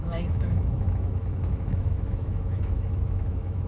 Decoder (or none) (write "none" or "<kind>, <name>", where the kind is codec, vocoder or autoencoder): autoencoder, DAC-VAE